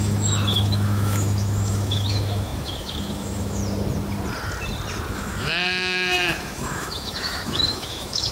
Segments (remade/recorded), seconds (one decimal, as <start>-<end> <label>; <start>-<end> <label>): 0.0-3.6 remade; 3.6-5.1 recorded; 5.1-8.3 remade